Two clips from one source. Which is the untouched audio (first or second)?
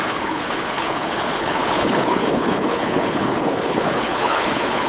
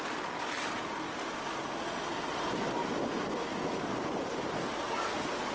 second